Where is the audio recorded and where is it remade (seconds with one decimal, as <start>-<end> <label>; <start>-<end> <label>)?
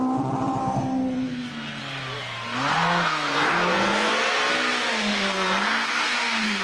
0.0-0.6 recorded; 0.6-1.8 remade; 1.8-2.7 recorded; 2.7-6.6 remade